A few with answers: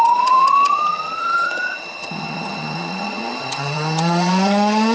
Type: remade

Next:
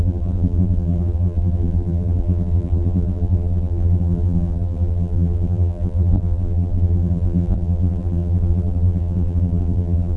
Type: remade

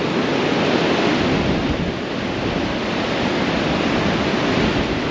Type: recorded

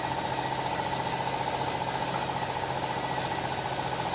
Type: recorded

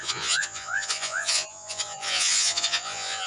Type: remade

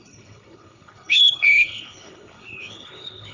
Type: remade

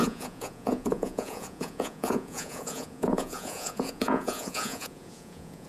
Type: remade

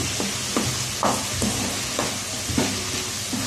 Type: recorded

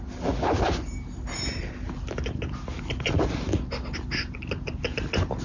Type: recorded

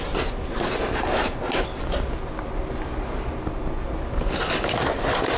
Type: recorded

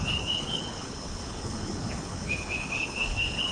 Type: remade